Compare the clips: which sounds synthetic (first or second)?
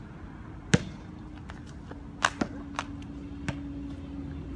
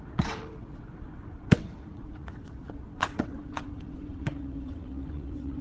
second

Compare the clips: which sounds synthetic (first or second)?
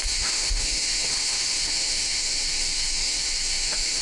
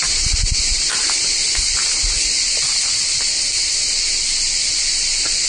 first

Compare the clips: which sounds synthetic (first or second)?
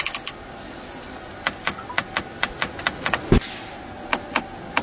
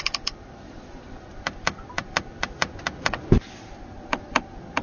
second